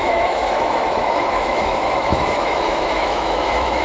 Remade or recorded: remade